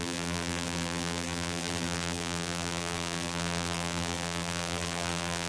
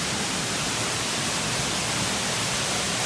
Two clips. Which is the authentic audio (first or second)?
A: second